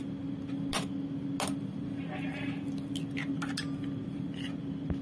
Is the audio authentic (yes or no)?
yes